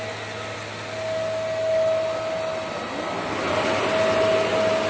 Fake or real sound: real